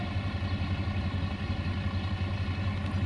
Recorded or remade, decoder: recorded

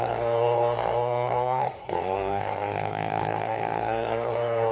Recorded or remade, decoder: remade, codec, SNAC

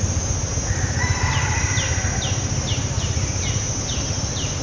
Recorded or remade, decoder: recorded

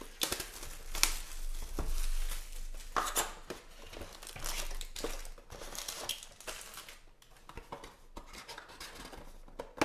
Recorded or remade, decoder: recorded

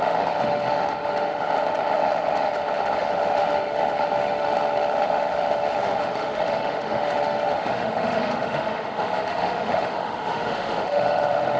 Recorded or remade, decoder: remade, autoencoder, DAC-VAE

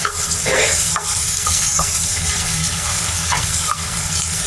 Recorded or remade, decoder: remade, codec, SNAC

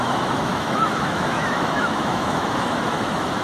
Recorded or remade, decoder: remade, autoencoder, DAC-VAE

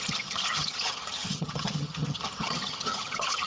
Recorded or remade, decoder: remade, vocoder, HiFi-GAN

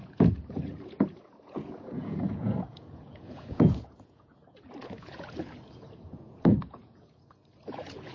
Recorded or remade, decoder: remade, vocoder, Vocos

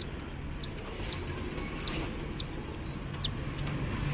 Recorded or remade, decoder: recorded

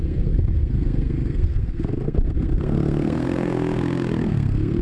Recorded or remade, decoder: remade, codec, SNAC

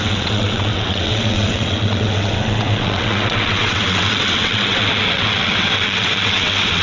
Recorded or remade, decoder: remade, vocoder, WaveNeXt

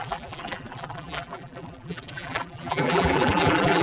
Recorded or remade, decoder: remade, vocoder, BigVGAN v2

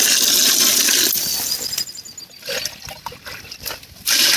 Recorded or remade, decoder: recorded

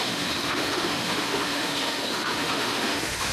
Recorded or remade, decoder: remade, autoencoder, DAC-VAE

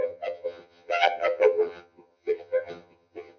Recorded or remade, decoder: remade, vocoder, HiFi-GAN